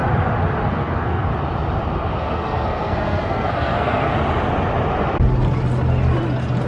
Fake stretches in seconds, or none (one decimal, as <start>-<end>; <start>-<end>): 0.7-1.3; 2.1-4.1

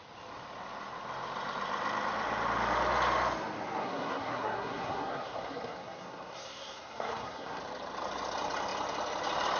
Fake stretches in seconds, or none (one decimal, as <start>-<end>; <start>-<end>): 3.8-7.6

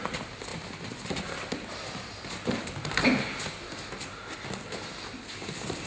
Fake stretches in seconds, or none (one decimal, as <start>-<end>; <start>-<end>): none

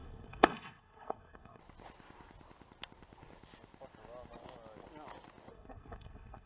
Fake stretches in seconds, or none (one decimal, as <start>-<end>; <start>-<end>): 0.0-1.6; 5.5-6.5

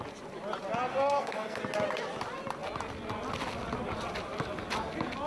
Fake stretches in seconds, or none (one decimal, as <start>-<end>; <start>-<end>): 0.9-1.6